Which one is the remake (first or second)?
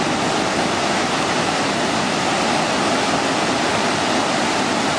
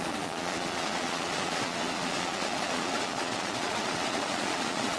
second